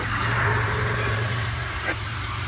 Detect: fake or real fake